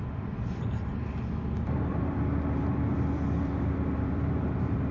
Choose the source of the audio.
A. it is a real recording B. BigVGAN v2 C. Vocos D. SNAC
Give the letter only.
B